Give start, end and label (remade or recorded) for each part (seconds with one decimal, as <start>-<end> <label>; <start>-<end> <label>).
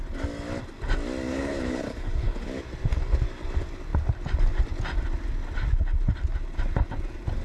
0.0-1.3 recorded; 1.3-2.6 remade; 2.6-7.4 recorded